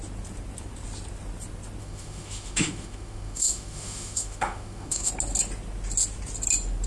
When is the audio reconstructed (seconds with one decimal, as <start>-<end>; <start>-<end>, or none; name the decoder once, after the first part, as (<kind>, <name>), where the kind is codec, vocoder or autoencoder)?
1.8-5.1 (autoencoder, DAC-VAE)